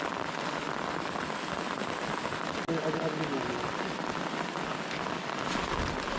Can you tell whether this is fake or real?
real